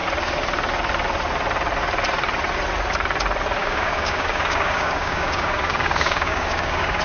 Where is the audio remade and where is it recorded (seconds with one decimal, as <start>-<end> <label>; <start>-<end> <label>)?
0.0-3.6 recorded; 3.6-7.0 remade